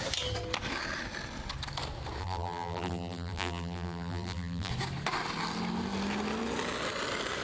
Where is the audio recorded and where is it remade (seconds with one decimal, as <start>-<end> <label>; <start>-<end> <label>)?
0.0-2.2 recorded; 2.2-4.7 remade; 4.7-7.4 recorded